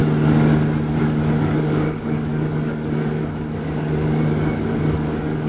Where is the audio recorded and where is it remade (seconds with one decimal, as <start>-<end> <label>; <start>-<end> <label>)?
0.0-1.0 recorded; 1.0-5.5 remade